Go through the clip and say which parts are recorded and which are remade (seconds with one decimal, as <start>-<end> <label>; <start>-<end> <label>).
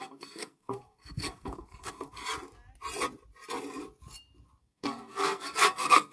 0.0-2.2 remade; 2.2-4.6 recorded; 4.6-6.1 remade